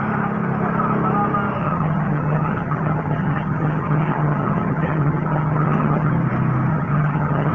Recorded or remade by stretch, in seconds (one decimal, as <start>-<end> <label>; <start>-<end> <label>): 0.0-1.6 recorded; 1.6-6.1 remade; 6.1-6.7 recorded; 6.7-7.5 remade